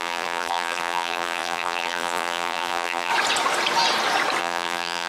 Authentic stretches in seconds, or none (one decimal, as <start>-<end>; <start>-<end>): 3.1-4.4